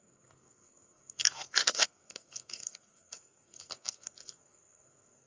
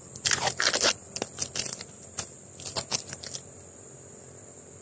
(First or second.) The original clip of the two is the second